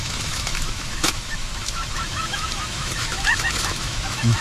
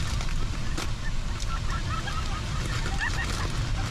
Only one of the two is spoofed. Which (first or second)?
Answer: first